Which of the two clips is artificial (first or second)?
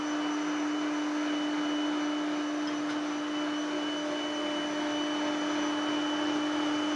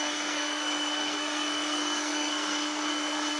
second